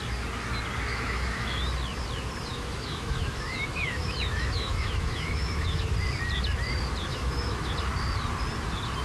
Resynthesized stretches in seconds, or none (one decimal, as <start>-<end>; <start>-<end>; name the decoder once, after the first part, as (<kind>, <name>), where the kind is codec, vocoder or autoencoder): 0.9-1.6 (autoencoder, DAC-VAE); 2.5-5.9; 7.1-7.7